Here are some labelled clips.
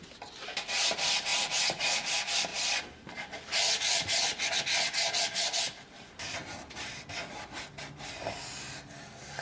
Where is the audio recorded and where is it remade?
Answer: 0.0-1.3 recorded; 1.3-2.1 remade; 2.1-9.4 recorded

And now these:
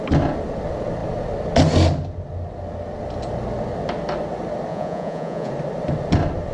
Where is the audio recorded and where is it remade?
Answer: 0.0-4.7 recorded; 4.7-5.5 remade; 5.5-6.5 recorded